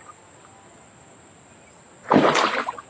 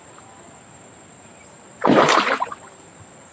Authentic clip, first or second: first